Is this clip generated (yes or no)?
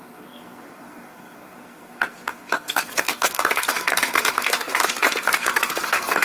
yes